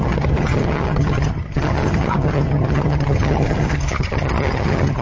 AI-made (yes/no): yes